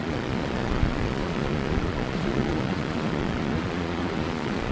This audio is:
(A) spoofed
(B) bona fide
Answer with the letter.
A